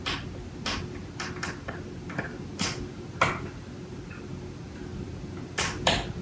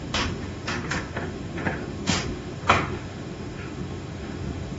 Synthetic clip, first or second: second